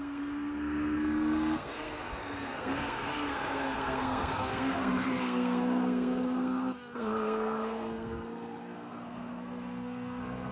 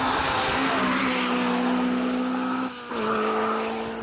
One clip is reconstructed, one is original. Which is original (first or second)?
second